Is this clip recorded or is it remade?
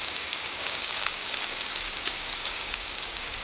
remade